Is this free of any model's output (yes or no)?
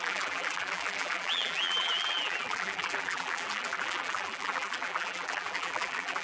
no